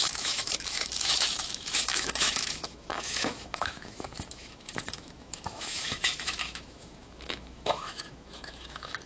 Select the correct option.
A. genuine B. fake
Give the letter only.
B